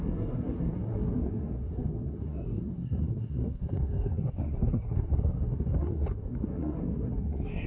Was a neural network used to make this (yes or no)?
yes